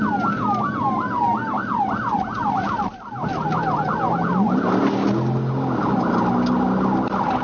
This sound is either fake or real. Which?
real